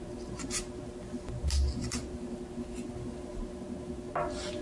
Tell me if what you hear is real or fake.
real